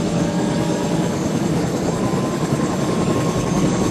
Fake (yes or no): yes